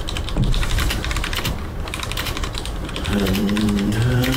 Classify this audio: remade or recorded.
remade